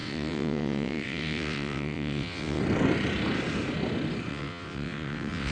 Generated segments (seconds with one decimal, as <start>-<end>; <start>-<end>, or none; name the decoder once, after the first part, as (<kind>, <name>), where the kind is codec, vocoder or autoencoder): 0.0-2.6 (vocoder, WaveNeXt); 4.3-5.5